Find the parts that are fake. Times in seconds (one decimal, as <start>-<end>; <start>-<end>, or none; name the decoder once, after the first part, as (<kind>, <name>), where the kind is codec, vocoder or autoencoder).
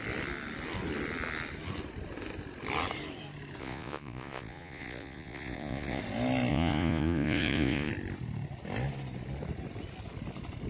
3.6-6.0 (vocoder, Vocos); 6.5-7.9